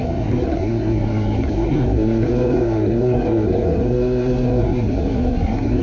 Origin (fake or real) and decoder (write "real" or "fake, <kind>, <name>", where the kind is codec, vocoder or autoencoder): fake, codec, SNAC